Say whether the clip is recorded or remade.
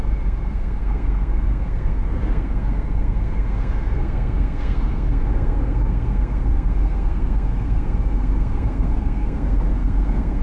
remade